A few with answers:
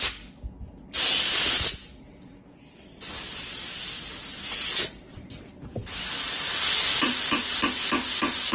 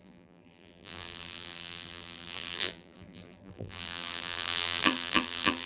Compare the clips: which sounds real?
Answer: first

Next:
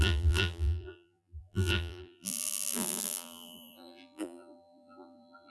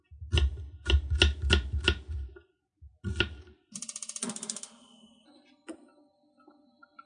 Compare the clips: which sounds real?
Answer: second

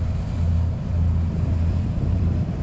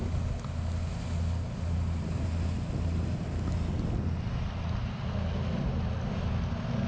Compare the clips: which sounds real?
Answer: second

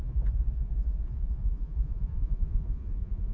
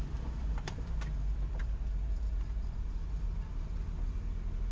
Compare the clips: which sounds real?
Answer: second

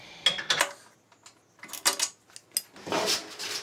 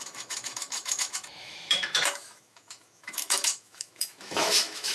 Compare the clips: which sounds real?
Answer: first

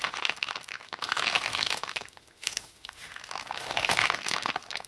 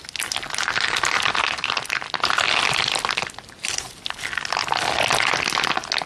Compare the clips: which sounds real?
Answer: second